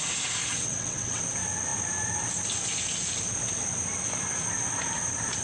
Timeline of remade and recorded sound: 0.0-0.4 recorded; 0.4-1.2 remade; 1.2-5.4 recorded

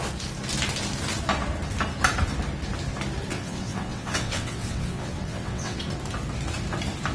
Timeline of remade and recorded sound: 0.0-3.3 recorded; 3.3-5.8 remade; 5.8-7.1 recorded

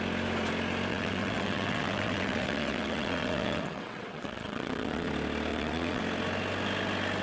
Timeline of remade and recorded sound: 0.0-0.9 recorded; 0.9-5.1 remade; 5.1-5.5 recorded; 5.5-6.0 remade; 6.0-7.2 recorded